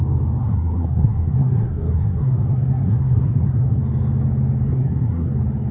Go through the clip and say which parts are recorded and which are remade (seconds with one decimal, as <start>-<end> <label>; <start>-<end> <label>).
0.0-0.4 recorded; 0.4-3.8 remade; 3.8-4.7 recorded; 4.7-5.3 remade; 5.3-5.7 recorded